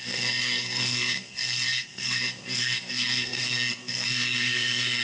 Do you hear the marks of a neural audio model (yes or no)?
yes